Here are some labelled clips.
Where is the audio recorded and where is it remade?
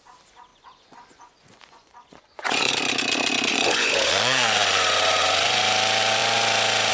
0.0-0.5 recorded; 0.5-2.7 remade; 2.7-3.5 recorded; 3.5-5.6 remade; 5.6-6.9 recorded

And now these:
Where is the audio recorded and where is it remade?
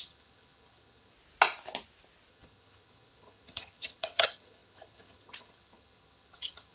0.0-1.1 remade; 1.1-2.3 recorded; 2.3-6.7 remade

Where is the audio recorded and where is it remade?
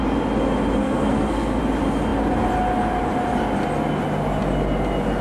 0.0-0.8 recorded; 0.8-1.6 remade; 1.6-5.2 recorded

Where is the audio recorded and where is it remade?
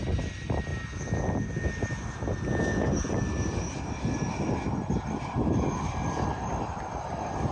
0.0-7.5 recorded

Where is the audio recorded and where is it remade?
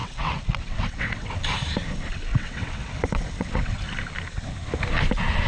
0.0-1.3 remade; 1.3-2.3 recorded; 2.3-3.8 remade; 3.8-5.5 recorded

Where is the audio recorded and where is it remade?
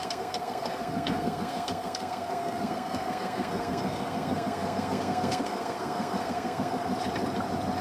0.0-6.9 remade; 6.9-7.8 recorded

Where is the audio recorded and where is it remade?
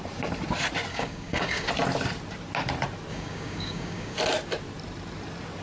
0.0-0.9 recorded; 0.9-1.7 remade; 1.7-3.1 recorded; 3.1-4.2 remade; 4.2-5.6 recorded